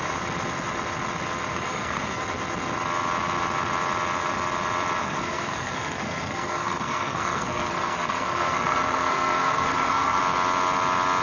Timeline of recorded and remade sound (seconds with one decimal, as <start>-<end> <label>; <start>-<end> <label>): 0.0-1.5 recorded; 1.5-2.2 remade; 2.2-5.0 recorded; 5.0-10.2 remade; 10.2-11.2 recorded